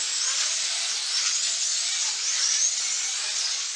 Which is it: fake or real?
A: real